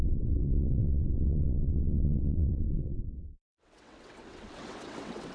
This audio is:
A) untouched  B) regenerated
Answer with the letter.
B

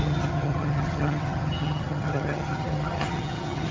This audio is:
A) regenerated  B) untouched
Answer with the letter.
A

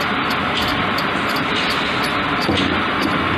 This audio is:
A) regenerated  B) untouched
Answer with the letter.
B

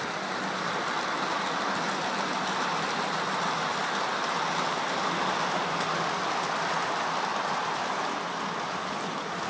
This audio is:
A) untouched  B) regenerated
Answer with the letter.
A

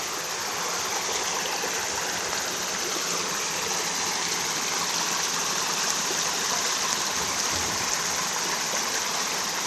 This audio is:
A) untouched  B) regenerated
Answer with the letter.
A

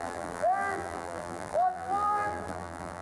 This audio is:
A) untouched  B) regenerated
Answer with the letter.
B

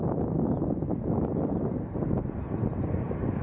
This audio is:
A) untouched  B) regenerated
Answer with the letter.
A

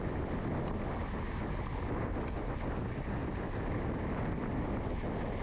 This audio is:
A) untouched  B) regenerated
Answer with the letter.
A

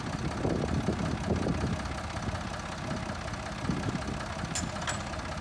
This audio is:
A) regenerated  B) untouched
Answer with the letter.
B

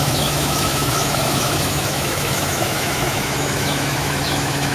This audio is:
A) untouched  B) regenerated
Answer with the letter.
B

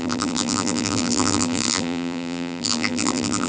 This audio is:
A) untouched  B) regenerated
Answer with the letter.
B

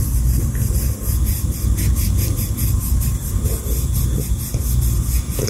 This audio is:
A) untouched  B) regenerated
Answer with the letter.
A